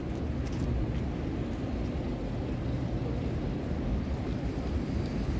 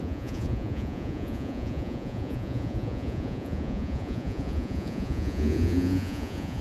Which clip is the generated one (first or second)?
second